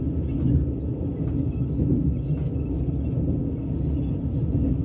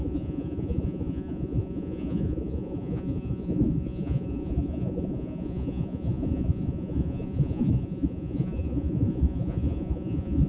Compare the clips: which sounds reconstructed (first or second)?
second